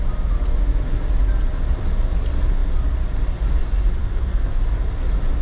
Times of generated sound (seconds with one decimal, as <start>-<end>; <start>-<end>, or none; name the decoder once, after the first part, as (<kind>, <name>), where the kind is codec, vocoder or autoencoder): 4.0-4.6 (codec, SNAC)